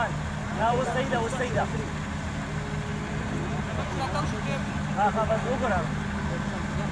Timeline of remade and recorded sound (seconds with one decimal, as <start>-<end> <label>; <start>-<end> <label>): 0.0-6.9 recorded